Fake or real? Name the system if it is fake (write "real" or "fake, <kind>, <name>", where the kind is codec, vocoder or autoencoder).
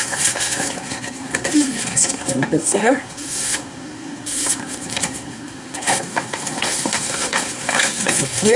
fake, codec, SNAC